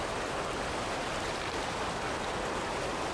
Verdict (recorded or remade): recorded